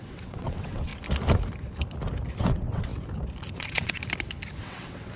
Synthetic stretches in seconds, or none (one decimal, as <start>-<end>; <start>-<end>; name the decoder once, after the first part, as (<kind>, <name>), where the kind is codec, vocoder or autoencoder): 0.0-0.9 (vocoder, WaveNeXt); 2.4-2.9; 3.5-4.0; 4.6-5.2